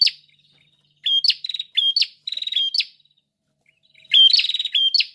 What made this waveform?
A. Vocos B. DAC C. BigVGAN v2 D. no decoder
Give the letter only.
D